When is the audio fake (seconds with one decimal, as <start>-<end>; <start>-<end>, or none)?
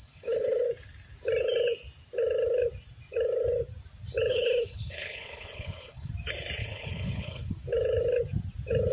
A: 0.0-0.6; 4.3-6.1; 6.6-7.5